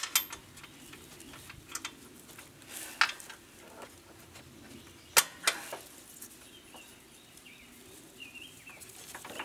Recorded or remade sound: recorded